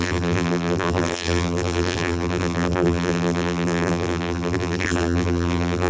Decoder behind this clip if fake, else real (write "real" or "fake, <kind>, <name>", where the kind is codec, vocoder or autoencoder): fake, vocoder, BigVGAN v2